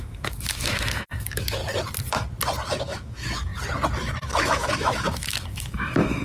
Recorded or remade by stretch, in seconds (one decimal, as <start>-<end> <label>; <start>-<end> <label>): 0.0-1.6 remade; 1.6-2.8 recorded; 2.8-3.5 remade; 3.5-4.3 recorded; 4.3-6.2 remade